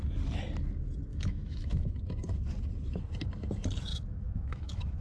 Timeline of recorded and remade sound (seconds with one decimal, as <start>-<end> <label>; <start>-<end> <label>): 0.0-1.1 recorded; 1.1-1.9 remade; 1.9-3.9 recorded; 3.9-5.0 remade